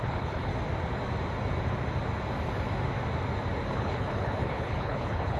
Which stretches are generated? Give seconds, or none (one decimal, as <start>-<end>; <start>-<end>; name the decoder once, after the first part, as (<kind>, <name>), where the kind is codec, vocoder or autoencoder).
0.0-0.5 (codec, HILCodec); 3.7-5.4